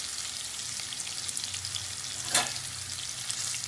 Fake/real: real